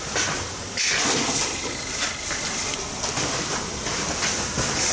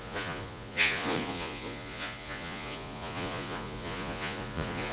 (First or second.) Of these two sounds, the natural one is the first